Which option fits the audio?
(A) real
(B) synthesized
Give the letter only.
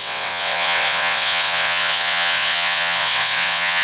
B